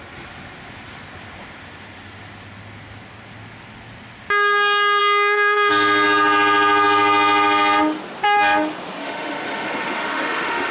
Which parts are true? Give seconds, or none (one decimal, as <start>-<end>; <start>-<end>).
0.0-5.0; 5.7-9.0